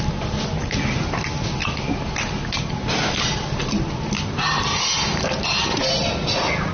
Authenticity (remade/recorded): recorded